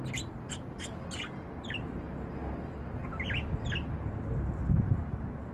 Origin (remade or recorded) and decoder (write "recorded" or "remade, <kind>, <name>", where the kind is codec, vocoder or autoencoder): recorded